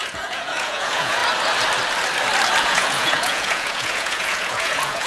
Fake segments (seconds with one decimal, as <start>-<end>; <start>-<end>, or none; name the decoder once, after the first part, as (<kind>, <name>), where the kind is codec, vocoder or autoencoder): 0.0-1.2 (vocoder, Vocos); 2.6-5.1